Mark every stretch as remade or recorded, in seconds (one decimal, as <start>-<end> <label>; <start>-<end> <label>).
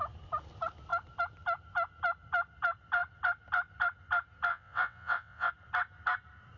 0.0-4.5 recorded; 4.5-5.5 remade; 5.5-6.6 recorded